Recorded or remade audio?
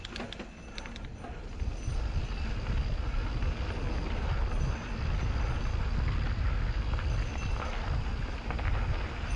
recorded